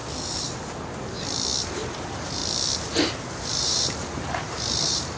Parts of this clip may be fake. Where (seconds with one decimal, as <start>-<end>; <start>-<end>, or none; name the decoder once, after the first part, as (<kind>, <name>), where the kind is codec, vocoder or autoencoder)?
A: 1.9-2.4 (vocoder, BigVGAN v2); 3.3-5.2